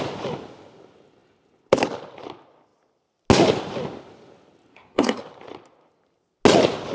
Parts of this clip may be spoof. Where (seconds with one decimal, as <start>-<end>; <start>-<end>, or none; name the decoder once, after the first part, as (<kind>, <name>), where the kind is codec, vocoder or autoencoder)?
4.7-5.2 (codec, SNAC)